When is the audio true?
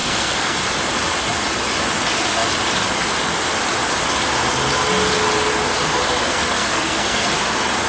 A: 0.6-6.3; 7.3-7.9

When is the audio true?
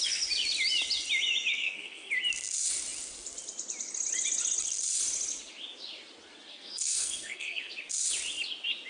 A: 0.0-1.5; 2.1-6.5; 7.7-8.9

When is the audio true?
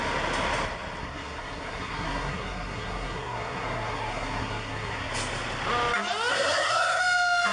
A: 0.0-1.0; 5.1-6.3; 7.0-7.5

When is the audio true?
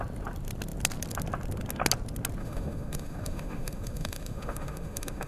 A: 0.0-2.4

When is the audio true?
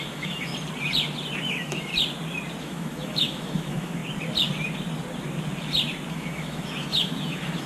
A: 0.5-1.5; 1.9-2.6; 4.0-6.1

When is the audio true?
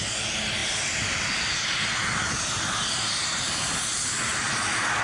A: 0.0-5.0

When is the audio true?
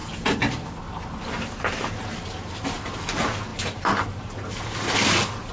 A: 0.0-5.5